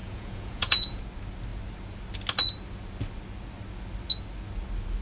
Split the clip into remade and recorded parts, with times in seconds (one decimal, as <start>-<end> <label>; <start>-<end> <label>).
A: 0.0-1.0 remade; 1.0-5.0 recorded